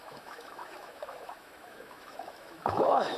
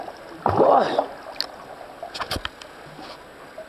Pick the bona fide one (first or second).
second